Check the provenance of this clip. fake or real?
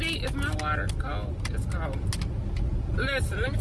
real